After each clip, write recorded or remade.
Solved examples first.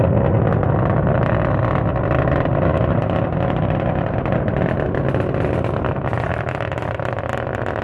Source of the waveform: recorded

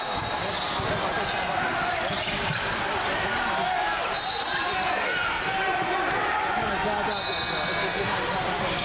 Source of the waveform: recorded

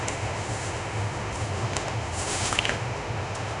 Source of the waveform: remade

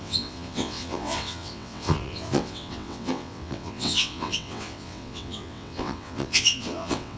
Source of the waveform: remade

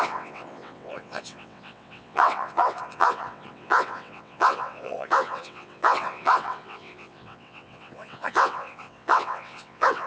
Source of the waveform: remade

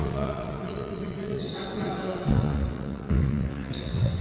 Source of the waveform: remade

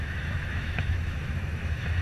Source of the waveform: remade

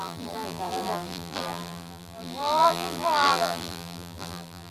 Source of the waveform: remade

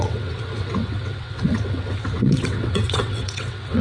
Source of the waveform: remade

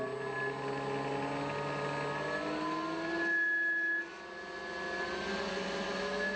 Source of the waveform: recorded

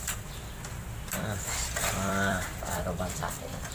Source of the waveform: remade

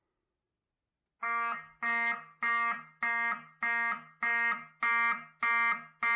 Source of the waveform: recorded